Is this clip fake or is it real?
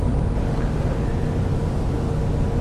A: real